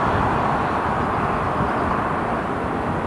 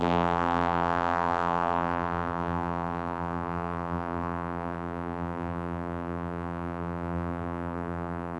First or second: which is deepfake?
second